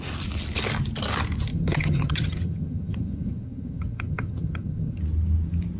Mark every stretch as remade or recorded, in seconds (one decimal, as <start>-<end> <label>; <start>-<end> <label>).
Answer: 0.0-1.5 recorded; 1.5-5.0 remade; 5.0-5.8 recorded